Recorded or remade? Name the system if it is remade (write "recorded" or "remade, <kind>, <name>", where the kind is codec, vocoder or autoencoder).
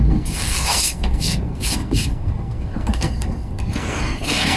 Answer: remade, codec, SNAC